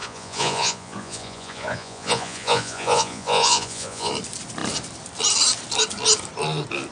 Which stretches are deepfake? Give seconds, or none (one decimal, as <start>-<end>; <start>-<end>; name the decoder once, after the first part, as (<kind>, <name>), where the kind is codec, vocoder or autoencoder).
0.0-4.1 (vocoder, Vocos)